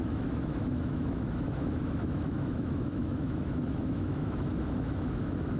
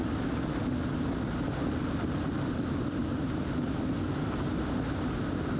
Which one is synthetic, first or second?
first